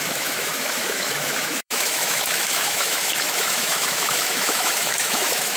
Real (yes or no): no